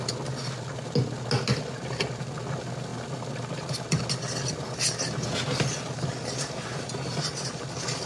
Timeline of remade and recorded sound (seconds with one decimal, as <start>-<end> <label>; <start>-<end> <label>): 0.0-8.1 recorded